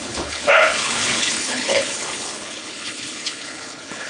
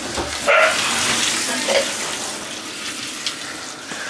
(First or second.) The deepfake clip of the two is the first